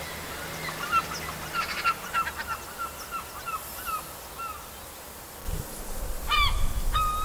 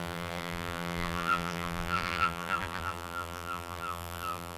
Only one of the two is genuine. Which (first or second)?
first